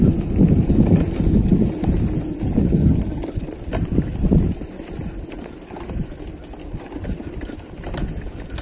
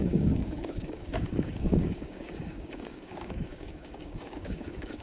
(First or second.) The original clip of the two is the first